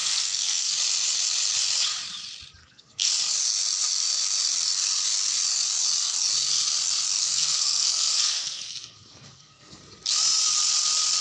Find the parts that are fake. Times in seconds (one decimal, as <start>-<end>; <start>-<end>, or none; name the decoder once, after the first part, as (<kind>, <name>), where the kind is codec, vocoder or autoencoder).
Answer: 0.0-0.7 (codec, SNAC); 2.6-3.1; 7.2-9.8

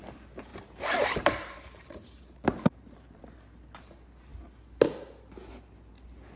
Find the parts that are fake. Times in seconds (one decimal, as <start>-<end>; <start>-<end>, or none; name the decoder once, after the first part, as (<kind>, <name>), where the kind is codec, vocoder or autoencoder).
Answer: 0.5-3.2 (vocoder, BigVGAN v2)

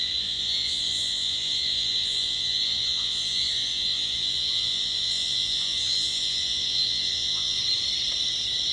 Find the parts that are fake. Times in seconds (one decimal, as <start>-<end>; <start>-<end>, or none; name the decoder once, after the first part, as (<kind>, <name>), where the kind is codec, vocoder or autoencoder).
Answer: 0.0-7.6 (vocoder, Vocos)

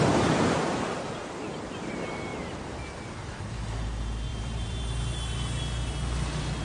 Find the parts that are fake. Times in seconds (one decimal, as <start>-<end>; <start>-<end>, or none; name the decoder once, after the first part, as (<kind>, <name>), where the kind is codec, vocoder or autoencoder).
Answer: 2.3-2.8 (vocoder, BigVGAN v2); 4.3-4.8